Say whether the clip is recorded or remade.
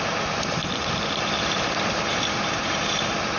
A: remade